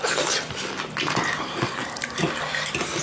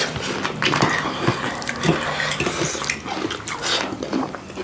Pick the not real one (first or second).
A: first